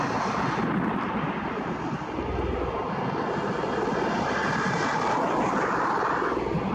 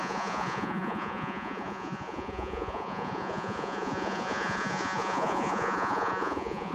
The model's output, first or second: second